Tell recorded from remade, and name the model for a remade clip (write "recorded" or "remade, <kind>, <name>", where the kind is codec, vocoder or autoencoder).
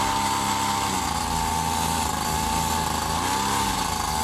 recorded